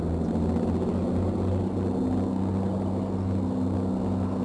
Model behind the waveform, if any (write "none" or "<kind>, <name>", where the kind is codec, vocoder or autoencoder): none